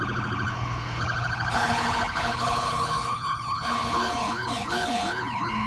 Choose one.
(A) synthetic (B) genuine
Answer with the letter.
A